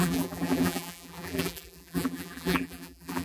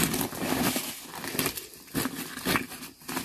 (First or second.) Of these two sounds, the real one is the second